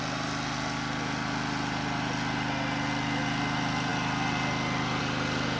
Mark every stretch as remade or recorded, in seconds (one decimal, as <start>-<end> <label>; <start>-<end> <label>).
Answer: 0.0-5.6 recorded